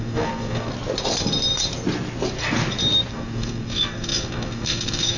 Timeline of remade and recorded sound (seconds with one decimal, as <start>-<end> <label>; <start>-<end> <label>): 0.0-0.7 remade; 0.7-3.1 recorded; 3.1-5.2 remade